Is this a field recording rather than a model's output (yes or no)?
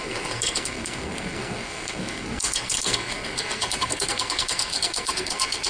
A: no